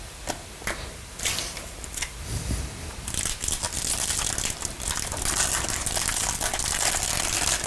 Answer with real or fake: real